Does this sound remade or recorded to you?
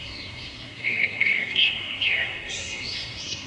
remade